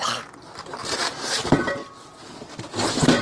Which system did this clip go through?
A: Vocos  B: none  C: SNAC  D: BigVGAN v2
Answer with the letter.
B